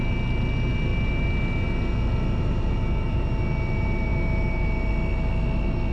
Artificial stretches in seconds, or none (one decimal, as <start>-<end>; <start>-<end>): none